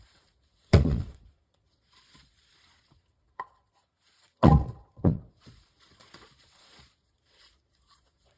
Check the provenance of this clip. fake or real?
fake